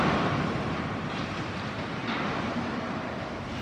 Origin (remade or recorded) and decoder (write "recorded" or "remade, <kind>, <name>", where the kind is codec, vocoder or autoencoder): remade, vocoder, BigVGAN v2